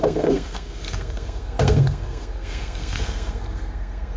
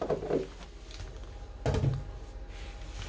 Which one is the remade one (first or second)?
first